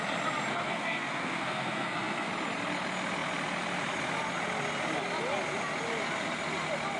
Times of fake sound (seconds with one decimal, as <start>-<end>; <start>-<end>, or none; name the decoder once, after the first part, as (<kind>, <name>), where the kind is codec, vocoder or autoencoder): 0.5-2.3 (codec, SNAC)